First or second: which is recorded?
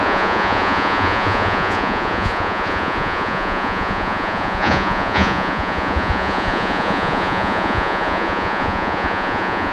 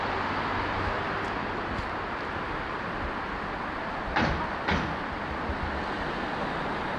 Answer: second